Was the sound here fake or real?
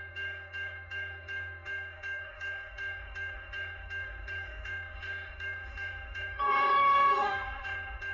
fake